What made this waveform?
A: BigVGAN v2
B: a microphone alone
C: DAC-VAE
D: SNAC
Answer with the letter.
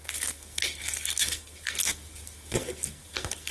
D